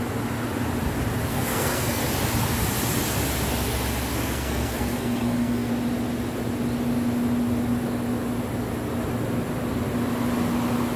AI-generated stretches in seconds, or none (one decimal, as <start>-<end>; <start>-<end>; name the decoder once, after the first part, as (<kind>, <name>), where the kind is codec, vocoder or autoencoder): 1.3-2.0 (codec, SNAC); 4.1-5.7